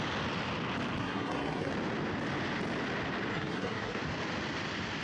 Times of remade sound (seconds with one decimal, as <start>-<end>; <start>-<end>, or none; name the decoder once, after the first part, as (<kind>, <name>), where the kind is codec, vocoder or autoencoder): 1.0-1.7 (codec, SNAC); 3.3-4.0